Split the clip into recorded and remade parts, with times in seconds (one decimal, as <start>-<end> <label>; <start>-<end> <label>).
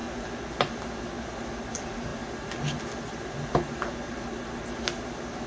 0.0-5.5 recorded